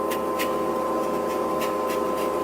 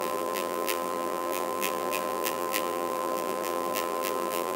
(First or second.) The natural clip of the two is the first